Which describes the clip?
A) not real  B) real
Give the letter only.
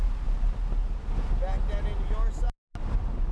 B